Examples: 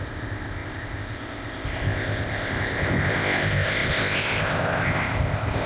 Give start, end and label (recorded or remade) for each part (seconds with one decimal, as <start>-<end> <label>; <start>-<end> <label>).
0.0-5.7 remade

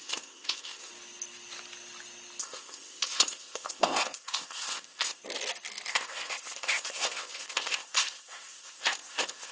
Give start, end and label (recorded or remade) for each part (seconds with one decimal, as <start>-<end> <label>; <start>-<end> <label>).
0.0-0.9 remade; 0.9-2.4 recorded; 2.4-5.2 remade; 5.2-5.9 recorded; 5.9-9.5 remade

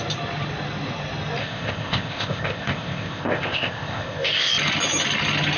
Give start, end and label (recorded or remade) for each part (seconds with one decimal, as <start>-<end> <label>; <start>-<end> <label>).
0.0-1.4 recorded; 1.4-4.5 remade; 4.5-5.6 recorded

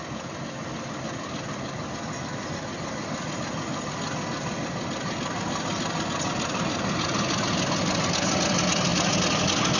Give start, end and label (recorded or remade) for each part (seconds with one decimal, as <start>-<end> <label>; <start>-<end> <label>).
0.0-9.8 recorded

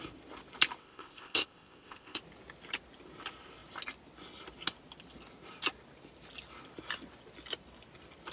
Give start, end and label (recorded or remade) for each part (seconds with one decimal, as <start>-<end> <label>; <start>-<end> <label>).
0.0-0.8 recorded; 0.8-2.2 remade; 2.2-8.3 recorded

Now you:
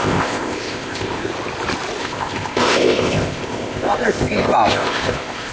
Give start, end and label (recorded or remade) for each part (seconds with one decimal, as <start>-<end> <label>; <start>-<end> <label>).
0.0-1.3 remade; 1.3-2.0 recorded; 2.0-5.5 remade

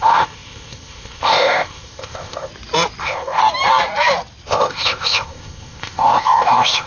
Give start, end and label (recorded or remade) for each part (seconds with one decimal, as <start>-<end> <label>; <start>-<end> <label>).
0.0-2.5 remade; 2.5-3.0 recorded; 3.0-3.4 remade; 3.4-4.5 recorded; 4.5-6.9 remade

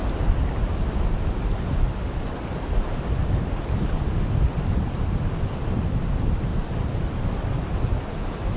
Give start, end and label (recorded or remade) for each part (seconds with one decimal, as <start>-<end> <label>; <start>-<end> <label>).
0.0-8.6 recorded